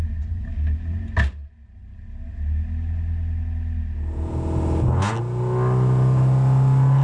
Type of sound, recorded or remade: recorded